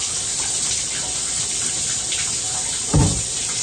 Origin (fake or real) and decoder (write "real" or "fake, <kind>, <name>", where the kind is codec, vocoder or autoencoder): real